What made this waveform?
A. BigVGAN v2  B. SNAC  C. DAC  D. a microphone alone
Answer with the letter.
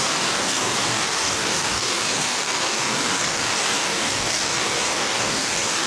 C